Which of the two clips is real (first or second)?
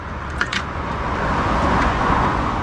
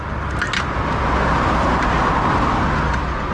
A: second